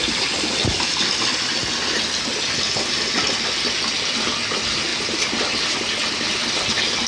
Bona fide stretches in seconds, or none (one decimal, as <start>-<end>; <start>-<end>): 0.0-7.1